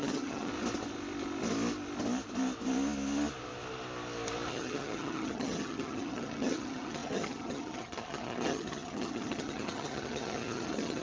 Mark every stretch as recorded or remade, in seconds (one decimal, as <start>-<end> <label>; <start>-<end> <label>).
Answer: 0.0-0.5 remade; 0.5-4.5 recorded; 4.5-11.0 remade